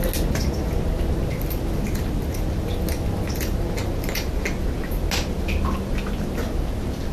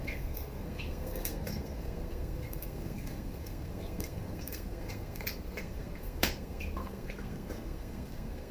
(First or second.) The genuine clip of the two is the first